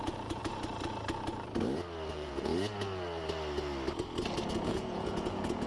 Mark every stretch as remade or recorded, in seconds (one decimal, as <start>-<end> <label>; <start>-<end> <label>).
0.0-0.4 remade; 0.4-2.1 recorded; 2.1-2.5 remade; 2.5-4.5 recorded; 4.5-5.7 remade